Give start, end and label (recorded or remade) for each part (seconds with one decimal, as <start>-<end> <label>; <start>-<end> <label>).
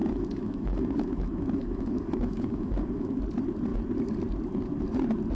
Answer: 0.0-3.2 remade; 3.2-5.3 recorded